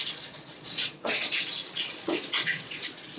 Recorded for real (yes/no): no